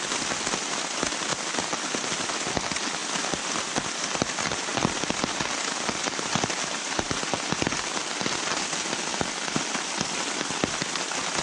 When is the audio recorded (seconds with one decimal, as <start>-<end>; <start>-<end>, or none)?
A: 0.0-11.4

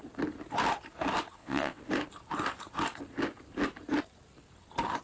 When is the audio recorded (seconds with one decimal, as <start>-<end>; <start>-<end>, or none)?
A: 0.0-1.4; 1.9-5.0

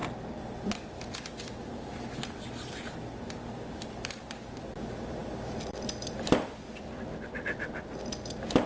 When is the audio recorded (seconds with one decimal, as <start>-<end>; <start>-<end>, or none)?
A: 0.0-8.7